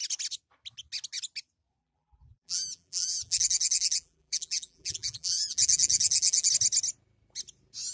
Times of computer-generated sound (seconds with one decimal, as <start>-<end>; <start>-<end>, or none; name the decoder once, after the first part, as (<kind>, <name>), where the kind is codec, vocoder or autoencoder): 1.8-6.5 (vocoder, BigVGAN v2)